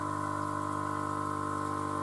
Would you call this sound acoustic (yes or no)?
yes